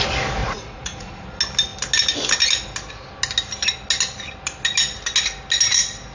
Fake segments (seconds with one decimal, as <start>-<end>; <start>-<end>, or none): 0.4-1.2